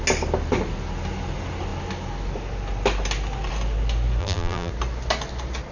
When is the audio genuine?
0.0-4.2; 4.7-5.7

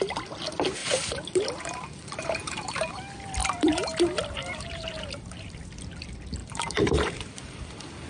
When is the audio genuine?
0.0-0.8; 2.9-3.4; 5.6-6.4

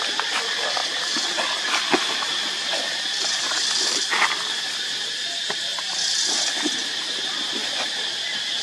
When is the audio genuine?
0.8-3.2; 7.6-8.6

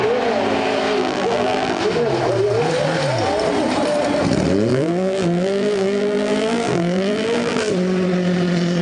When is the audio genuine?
0.0-1.0; 1.8-4.7; 7.7-8.8

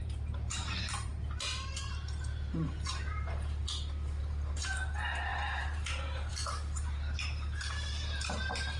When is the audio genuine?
1.1-2.2; 3.6-4.2